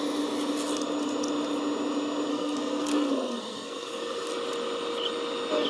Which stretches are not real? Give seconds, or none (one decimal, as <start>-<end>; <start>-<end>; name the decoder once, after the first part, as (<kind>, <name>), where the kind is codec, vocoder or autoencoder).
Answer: 2.3-4.3 (codec, SNAC)